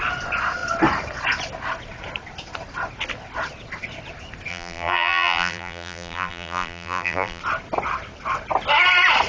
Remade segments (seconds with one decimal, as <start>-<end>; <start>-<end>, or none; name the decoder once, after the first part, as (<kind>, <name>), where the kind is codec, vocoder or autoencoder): 4.5-7.4 (vocoder, BigVGAN v2)